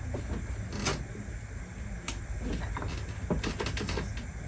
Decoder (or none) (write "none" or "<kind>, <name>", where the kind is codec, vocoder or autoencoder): none